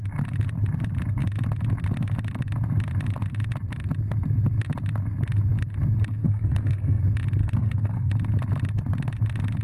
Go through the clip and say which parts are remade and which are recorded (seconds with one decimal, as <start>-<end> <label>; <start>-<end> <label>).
0.0-6.2 recorded; 6.2-7.0 remade; 7.0-7.4 recorded; 7.4-8.1 remade; 8.1-9.6 recorded